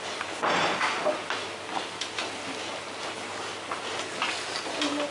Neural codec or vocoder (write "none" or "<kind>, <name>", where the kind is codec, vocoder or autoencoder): none